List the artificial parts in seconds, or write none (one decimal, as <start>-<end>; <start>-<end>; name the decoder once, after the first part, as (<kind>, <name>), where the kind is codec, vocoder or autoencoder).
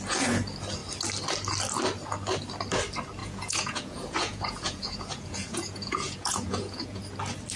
3.2-7.0 (vocoder, Vocos)